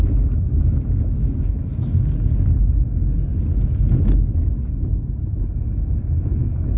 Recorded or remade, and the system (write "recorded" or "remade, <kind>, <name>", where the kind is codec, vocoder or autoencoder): recorded